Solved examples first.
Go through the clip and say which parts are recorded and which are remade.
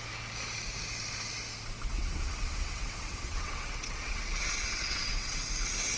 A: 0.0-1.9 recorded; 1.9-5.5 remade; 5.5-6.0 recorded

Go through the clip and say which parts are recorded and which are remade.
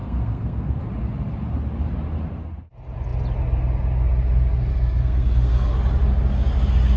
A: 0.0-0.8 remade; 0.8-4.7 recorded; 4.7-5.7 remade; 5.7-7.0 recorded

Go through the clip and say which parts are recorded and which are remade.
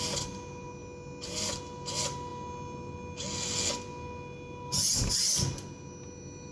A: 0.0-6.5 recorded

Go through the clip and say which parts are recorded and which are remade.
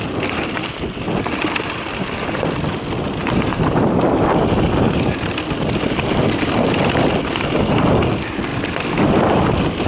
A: 0.0-9.9 recorded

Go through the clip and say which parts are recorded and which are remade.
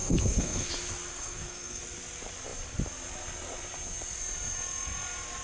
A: 0.0-0.7 remade; 0.7-1.1 recorded; 1.1-1.8 remade; 1.8-5.4 recorded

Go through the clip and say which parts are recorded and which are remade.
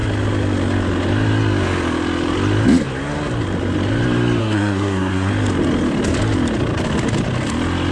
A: 0.0-4.4 recorded; 4.4-5.3 remade; 5.3-7.9 recorded